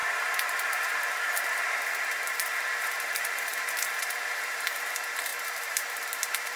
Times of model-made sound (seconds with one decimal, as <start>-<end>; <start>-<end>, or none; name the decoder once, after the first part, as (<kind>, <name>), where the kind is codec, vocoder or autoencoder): 0.0-6.6 (vocoder, BigVGAN v2)